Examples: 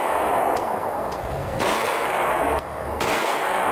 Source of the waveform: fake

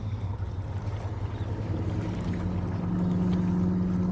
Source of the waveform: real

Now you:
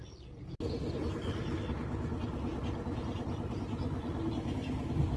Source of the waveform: real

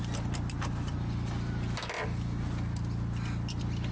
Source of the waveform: real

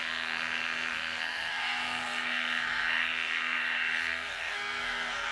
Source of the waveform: fake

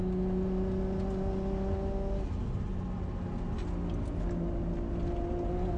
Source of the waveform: real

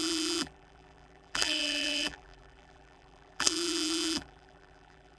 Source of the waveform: fake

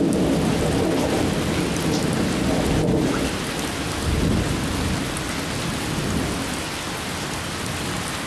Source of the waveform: real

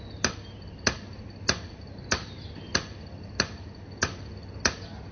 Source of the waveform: real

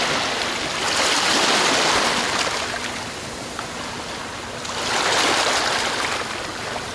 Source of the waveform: real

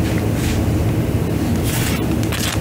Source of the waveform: real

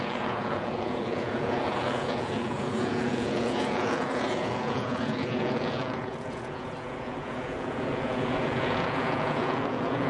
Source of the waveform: fake